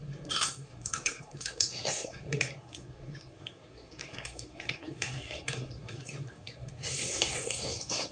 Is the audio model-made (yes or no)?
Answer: yes